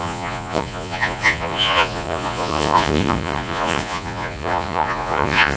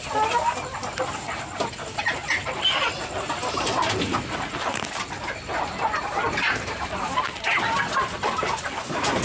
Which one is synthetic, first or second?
first